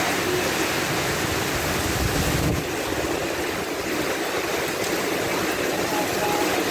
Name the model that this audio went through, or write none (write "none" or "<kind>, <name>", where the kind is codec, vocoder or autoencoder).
none